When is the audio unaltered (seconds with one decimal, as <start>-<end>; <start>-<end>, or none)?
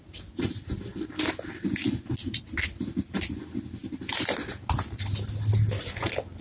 0.0-6.4